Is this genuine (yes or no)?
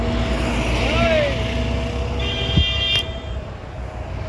yes